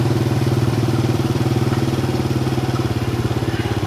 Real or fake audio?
fake